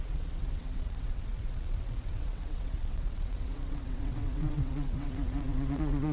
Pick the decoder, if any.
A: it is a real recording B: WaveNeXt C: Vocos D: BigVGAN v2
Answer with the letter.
B